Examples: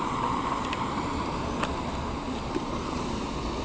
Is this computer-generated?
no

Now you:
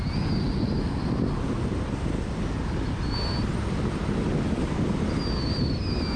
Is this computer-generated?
no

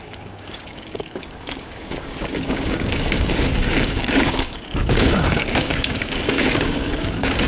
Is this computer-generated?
yes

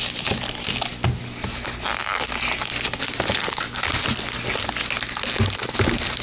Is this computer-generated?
no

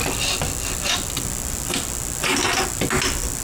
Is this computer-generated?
no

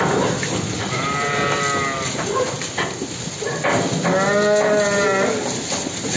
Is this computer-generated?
no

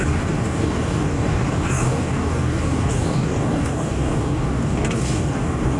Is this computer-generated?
yes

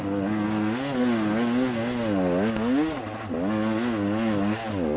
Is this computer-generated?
no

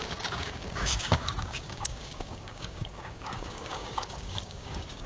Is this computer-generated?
yes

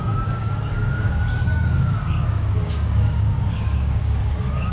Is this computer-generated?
yes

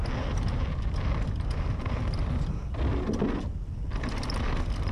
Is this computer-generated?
no